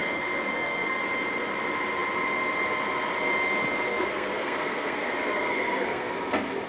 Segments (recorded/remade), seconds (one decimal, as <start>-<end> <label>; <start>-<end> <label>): 0.0-1.0 remade; 1.0-3.9 recorded; 3.9-6.1 remade; 6.1-6.7 recorded